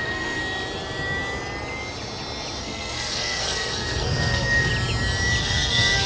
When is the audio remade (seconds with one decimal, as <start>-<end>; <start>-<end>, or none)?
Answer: 0.0-0.4; 2.6-4.7; 5.4-6.1